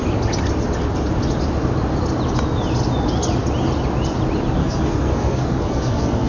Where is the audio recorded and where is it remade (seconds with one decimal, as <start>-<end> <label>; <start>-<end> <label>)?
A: 0.0-4.6 recorded; 4.6-6.3 remade